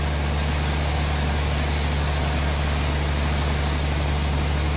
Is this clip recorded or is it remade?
recorded